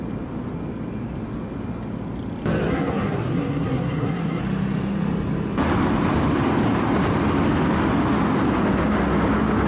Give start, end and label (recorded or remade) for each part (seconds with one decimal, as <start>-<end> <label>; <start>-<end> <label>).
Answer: 0.0-2.7 recorded; 2.7-4.4 remade; 4.4-9.7 recorded